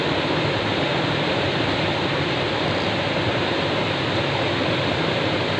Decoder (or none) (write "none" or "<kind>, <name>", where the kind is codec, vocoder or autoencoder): none